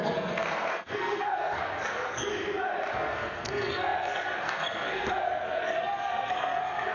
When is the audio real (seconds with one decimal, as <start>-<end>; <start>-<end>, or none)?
2.3-2.9

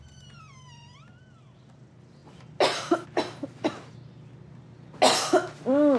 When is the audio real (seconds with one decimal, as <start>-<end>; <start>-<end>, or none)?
0.0-6.0

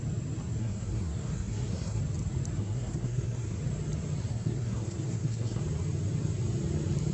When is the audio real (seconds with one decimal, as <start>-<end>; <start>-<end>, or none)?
0.0-0.6; 2.0-2.6; 3.6-4.3; 5.6-7.1

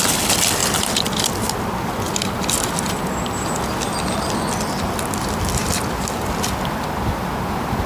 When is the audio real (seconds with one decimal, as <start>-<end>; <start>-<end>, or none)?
0.0-7.9

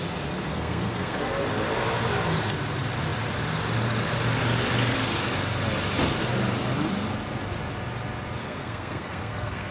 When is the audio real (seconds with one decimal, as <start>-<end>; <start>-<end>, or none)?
0.0-0.5; 1.2-8.4

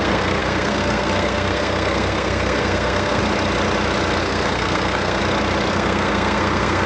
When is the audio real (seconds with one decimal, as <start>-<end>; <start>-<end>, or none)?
3.2-4.2; 5.2-5.7